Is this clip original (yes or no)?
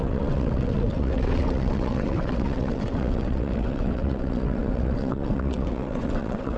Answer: no